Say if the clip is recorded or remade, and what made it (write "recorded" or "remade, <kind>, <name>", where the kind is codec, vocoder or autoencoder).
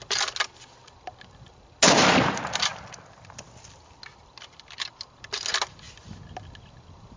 recorded